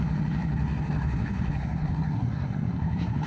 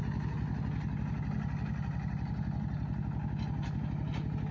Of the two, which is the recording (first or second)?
second